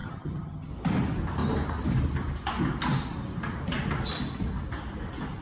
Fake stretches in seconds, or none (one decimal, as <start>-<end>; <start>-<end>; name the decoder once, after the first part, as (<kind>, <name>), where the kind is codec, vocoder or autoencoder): 0.0-0.7 (vocoder, HiFi-GAN)